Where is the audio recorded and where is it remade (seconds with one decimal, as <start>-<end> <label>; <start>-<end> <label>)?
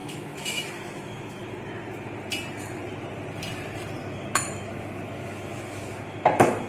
0.0-1.4 remade; 1.4-4.0 recorded; 4.0-6.7 remade